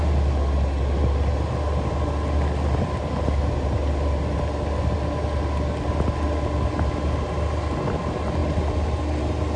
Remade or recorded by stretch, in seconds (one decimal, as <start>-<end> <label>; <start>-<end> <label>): 0.0-9.6 recorded